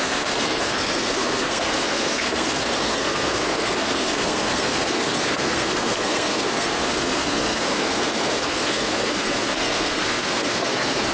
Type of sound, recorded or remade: remade